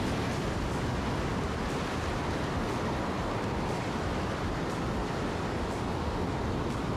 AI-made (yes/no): no